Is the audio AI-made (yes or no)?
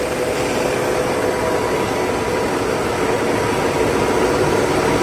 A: no